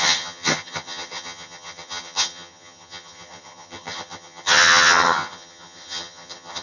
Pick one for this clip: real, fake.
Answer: fake